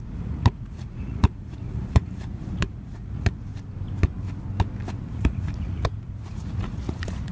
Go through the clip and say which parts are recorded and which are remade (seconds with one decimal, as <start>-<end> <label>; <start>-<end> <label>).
0.0-3.5 remade; 3.5-5.1 recorded; 5.1-7.3 remade